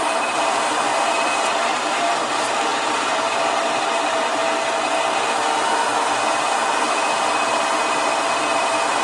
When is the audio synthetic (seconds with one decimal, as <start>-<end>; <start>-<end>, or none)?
0.0-0.9; 1.5-4.4; 8.6-9.0